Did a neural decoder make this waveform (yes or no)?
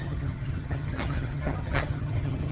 yes